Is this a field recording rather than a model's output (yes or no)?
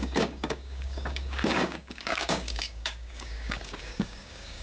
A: no